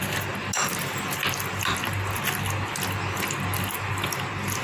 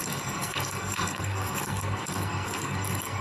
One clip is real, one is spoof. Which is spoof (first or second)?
second